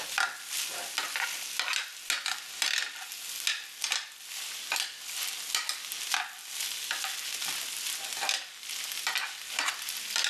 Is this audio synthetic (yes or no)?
no